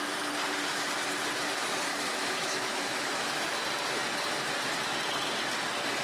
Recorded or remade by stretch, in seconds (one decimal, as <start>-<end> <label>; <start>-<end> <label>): 0.0-1.9 recorded; 1.9-3.6 remade; 3.6-6.0 recorded

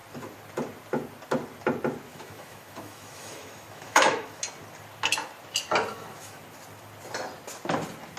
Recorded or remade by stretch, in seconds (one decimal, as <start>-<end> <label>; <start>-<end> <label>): 0.0-2.1 recorded; 2.1-4.4 remade; 4.4-5.9 recorded; 5.9-6.4 remade; 6.4-8.2 recorded

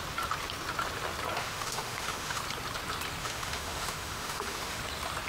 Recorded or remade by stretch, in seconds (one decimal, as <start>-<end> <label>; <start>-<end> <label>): 0.0-1.4 recorded; 1.4-2.4 remade; 2.4-3.2 recorded; 3.2-4.8 remade; 4.8-5.3 recorded